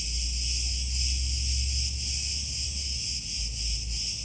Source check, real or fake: real